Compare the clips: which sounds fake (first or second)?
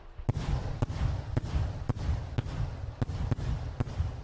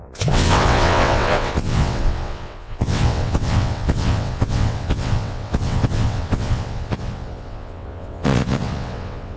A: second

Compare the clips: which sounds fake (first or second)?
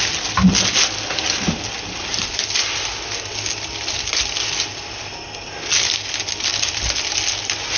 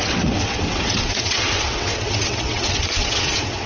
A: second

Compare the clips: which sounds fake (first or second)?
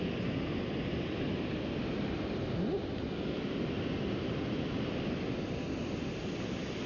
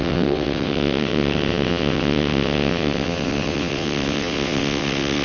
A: second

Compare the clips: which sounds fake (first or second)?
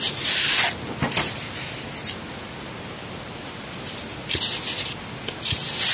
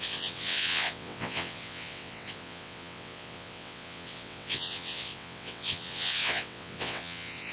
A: second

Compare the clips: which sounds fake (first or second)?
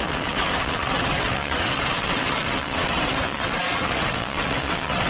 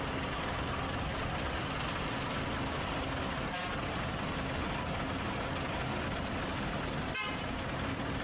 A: first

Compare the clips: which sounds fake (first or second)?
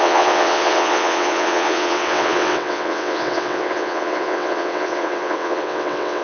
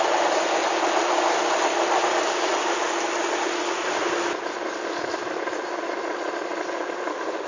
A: first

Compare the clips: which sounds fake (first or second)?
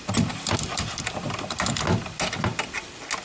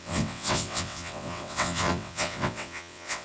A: second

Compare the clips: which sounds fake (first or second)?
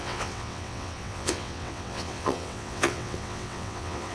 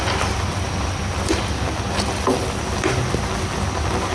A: first